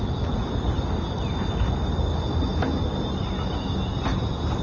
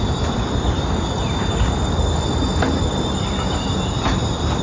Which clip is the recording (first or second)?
first